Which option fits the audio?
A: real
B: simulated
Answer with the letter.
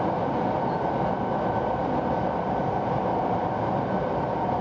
A